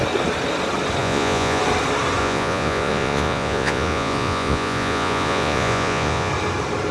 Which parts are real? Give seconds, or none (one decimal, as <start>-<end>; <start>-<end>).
0.0-1.0; 1.6-2.2; 6.3-6.9